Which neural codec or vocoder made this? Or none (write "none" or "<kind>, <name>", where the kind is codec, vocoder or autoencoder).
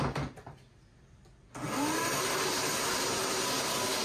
none